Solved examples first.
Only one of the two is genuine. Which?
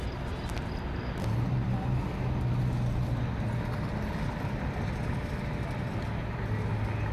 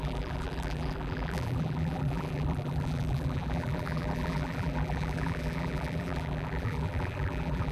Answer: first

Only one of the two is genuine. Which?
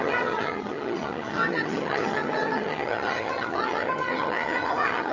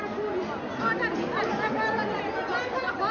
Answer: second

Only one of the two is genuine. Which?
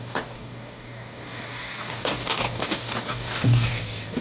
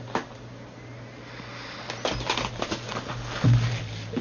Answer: second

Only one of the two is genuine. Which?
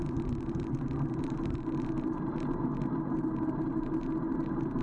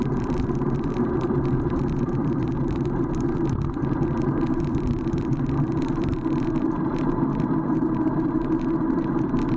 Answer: first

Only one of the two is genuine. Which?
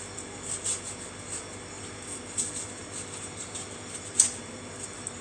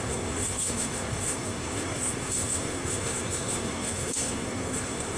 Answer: first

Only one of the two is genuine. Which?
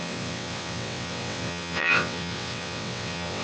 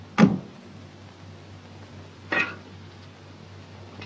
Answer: second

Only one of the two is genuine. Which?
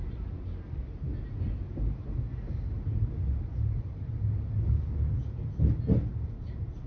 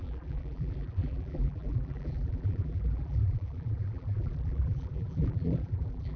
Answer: first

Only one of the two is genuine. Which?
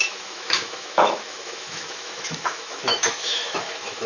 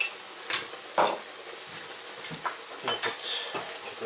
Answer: second